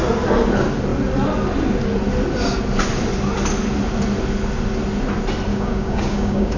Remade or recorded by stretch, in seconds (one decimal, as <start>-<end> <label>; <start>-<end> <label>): 0.0-5.5 recorded; 5.5-6.6 remade

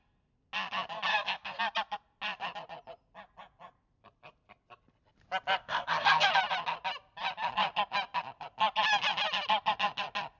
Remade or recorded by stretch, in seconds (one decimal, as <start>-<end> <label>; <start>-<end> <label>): 0.0-1.1 recorded; 1.1-1.6 remade; 1.6-5.6 recorded; 5.6-6.3 remade; 6.3-10.4 recorded

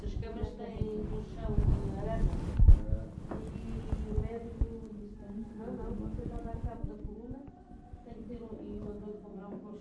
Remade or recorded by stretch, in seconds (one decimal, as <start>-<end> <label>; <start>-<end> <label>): 0.0-9.8 recorded